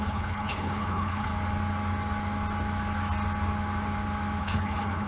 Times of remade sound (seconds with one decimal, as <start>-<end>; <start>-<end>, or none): 0.0-1.3; 4.4-5.1